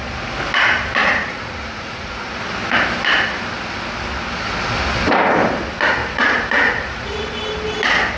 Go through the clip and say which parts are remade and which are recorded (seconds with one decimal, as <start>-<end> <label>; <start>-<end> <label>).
0.0-1.0 recorded; 1.0-2.4 remade; 2.4-6.0 recorded; 6.0-7.3 remade; 7.3-8.2 recorded